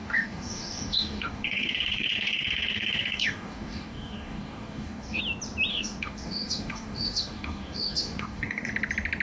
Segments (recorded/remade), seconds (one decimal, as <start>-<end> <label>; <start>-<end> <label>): 0.0-5.2 remade; 5.2-5.7 recorded; 5.7-8.7 remade; 8.7-9.2 recorded